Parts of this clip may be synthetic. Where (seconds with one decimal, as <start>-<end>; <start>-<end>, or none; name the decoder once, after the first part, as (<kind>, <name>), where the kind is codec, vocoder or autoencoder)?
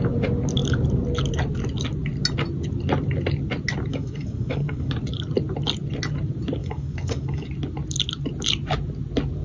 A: 3.9-4.9 (codec, DAC); 6.6-7.5